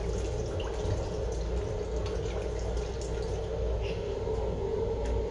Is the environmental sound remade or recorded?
recorded